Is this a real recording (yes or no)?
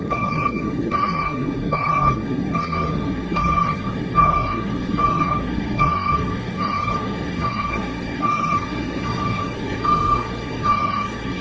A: no